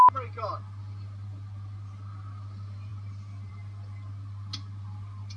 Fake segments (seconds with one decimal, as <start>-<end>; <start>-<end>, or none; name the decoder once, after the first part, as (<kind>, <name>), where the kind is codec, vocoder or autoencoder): none